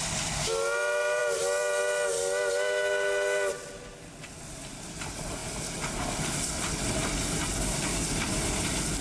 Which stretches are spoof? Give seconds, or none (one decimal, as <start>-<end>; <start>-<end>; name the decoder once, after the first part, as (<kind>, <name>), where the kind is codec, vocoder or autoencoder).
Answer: none